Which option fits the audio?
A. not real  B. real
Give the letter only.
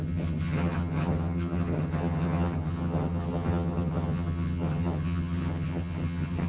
A